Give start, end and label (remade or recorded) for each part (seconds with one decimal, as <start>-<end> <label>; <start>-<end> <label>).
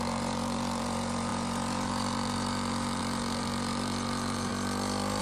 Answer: 0.0-4.5 remade; 4.5-5.2 recorded